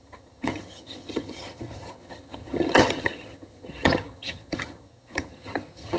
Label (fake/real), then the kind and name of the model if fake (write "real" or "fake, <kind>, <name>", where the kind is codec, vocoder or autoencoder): fake, vocoder, HiFi-GAN